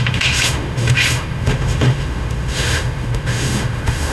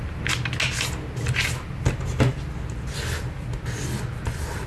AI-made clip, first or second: first